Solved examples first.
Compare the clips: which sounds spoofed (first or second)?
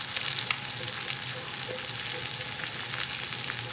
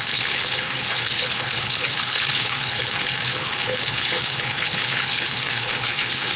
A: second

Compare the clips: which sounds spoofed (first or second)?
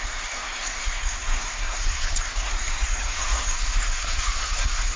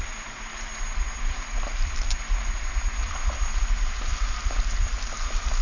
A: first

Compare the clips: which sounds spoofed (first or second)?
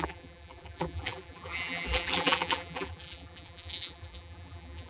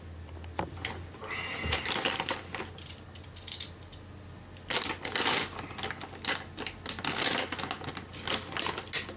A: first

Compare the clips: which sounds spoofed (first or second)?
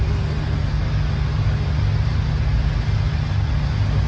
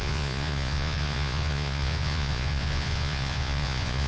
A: second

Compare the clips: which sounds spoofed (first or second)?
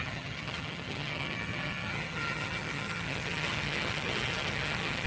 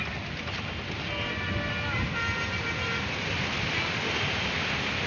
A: first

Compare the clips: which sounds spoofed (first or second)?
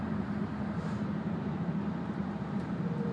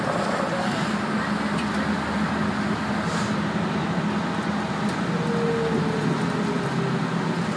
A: first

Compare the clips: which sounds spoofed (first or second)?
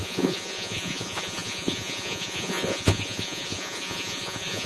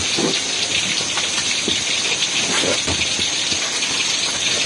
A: first